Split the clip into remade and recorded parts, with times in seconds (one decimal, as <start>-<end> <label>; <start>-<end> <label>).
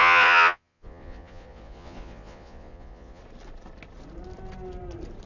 0.0-3.2 remade; 3.2-5.3 recorded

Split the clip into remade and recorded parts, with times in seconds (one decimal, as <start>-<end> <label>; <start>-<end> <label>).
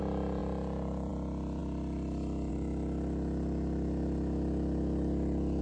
0.0-5.6 recorded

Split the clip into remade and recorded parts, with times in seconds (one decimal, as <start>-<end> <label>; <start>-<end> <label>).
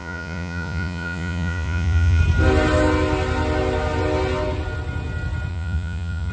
0.0-2.2 remade; 2.2-5.5 recorded; 5.5-6.3 remade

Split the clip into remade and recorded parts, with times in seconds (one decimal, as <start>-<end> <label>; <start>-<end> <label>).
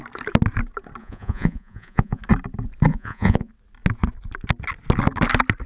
0.0-1.0 recorded; 1.0-2.2 remade; 2.2-2.9 recorded; 2.9-3.5 remade; 3.5-5.7 recorded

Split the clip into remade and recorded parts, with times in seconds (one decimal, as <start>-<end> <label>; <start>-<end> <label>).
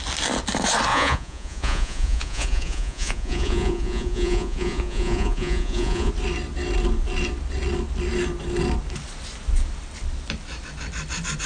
0.0-0.9 recorded; 0.9-6.1 remade; 6.1-11.5 recorded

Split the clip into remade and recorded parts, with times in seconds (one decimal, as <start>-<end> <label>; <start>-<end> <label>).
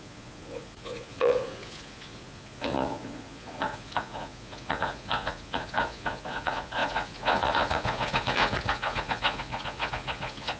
0.0-10.6 remade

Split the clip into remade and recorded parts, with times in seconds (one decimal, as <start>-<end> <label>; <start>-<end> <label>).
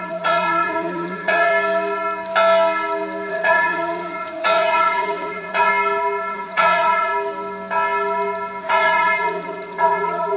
0.0-1.5 remade; 1.5-3.3 recorded; 3.3-5.7 remade; 5.7-6.3 recorded; 6.3-7.1 remade; 7.1-8.6 recorded; 8.6-10.4 remade